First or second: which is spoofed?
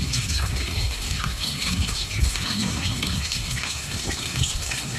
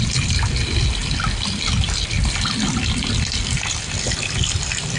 first